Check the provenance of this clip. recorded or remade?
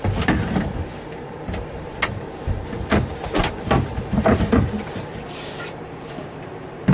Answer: remade